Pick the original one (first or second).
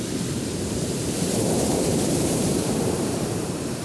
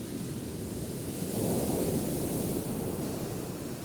second